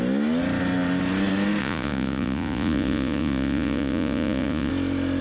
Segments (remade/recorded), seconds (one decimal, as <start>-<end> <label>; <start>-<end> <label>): 0.0-1.6 recorded; 1.6-4.7 remade; 4.7-5.2 recorded